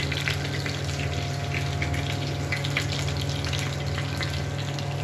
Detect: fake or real real